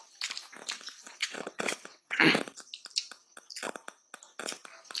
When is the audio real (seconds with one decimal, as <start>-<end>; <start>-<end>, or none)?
0.0-1.2; 2.3-5.0